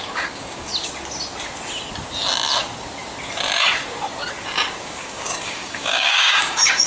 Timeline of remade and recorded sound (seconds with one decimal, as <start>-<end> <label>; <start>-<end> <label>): 0.0-0.7 remade; 0.7-4.8 recorded; 4.8-6.9 remade